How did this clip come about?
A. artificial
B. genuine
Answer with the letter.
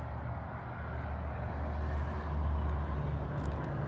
B